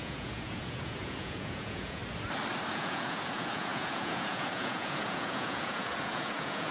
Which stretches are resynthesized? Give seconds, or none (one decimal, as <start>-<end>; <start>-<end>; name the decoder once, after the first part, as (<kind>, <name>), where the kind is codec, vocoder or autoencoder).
0.0-2.0 (vocoder, Vocos); 2.7-6.7